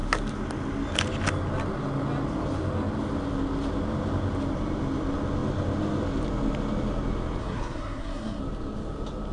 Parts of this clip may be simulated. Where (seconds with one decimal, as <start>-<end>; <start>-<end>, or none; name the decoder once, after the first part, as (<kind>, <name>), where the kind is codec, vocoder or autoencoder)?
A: 7.4-8.4 (codec, SNAC)